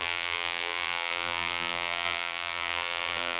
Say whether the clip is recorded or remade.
remade